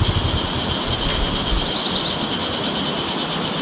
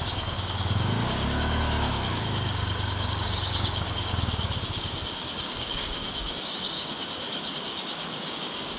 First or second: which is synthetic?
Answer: second